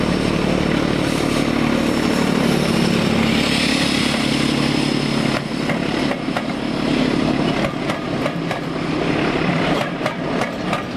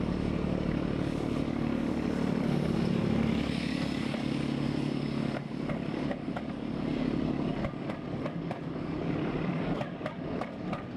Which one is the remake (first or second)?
second